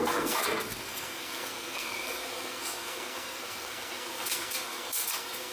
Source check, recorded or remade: remade